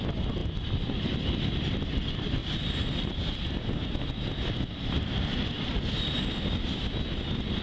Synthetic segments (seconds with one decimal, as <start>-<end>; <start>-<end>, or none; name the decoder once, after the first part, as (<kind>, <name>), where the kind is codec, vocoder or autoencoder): none